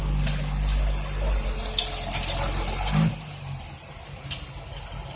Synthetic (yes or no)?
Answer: no